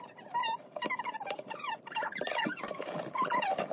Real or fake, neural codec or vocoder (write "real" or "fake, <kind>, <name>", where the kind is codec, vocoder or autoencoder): fake, vocoder, BigVGAN v2